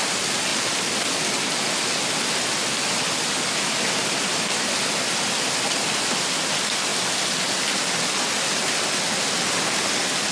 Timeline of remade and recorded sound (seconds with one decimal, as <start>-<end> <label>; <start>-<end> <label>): 0.0-10.3 recorded